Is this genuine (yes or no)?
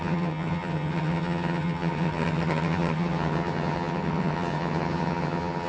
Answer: no